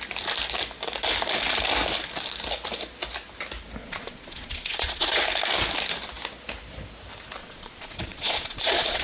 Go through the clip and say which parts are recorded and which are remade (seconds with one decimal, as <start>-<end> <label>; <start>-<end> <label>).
0.0-3.8 recorded; 3.8-5.2 remade; 5.2-7.4 recorded; 7.4-9.0 remade